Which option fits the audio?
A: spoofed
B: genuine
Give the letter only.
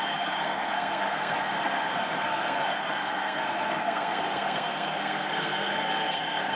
A